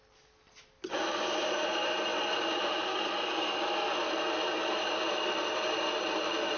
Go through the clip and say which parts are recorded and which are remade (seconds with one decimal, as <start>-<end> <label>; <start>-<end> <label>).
0.0-6.6 recorded